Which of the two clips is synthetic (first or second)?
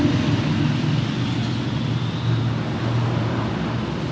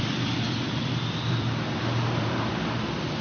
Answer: second